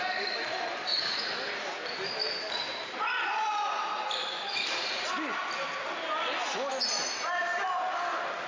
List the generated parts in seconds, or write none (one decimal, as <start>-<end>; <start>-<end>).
0.9-1.5; 4.2-4.7